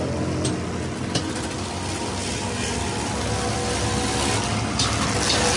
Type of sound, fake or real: real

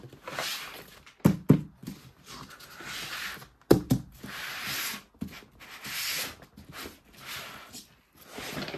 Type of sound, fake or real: real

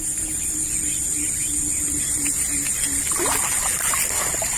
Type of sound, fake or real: real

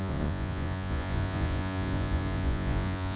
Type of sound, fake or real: fake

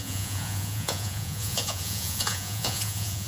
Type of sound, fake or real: fake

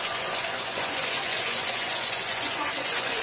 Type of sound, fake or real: fake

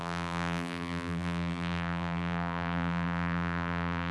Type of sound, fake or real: fake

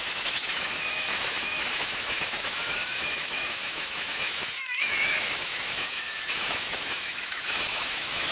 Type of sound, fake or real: fake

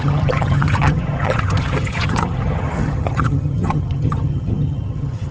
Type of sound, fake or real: fake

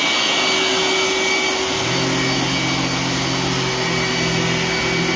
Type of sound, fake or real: real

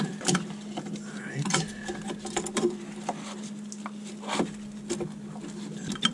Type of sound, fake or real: real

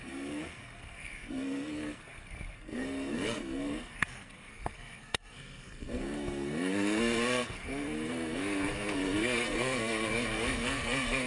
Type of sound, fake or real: fake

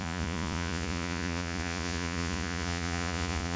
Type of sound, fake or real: fake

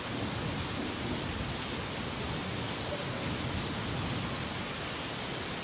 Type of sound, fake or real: real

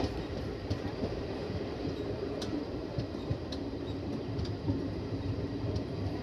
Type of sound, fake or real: fake